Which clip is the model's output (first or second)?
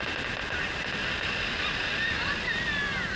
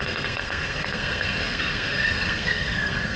second